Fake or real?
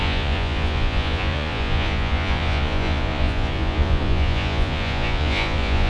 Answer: fake